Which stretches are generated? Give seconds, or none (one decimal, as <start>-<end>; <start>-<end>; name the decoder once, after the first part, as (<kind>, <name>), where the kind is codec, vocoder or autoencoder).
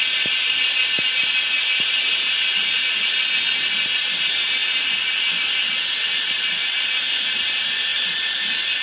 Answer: none